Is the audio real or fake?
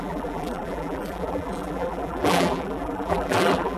fake